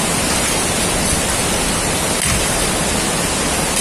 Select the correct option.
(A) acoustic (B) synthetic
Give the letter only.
A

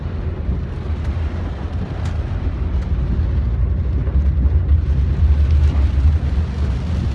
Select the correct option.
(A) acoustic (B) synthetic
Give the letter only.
A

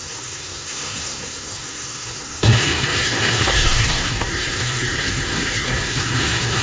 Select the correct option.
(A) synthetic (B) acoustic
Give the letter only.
A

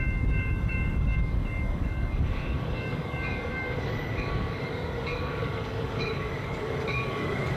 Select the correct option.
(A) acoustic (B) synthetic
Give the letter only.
B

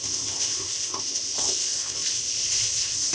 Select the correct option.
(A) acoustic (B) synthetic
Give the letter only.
B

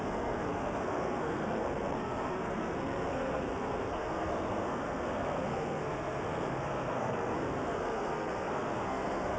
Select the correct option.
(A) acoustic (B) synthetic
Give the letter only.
B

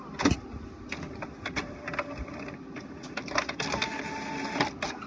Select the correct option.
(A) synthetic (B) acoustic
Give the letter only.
B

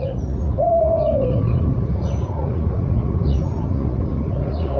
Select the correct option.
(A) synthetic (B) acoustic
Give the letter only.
A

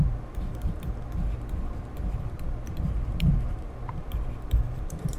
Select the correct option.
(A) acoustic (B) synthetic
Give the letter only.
B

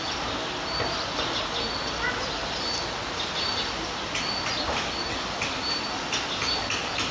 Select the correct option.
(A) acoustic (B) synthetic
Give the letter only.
A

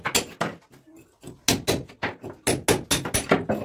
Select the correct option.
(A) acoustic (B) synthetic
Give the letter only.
A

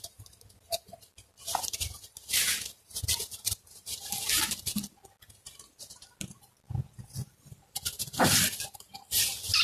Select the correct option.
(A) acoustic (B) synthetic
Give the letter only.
A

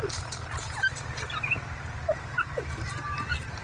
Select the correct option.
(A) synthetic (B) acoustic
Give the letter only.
B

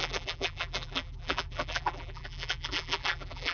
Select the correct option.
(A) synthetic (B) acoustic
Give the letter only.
A